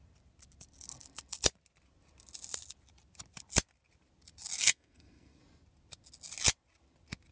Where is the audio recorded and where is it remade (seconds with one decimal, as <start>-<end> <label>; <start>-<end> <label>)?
0.0-4.6 recorded; 4.6-5.4 remade; 5.4-7.3 recorded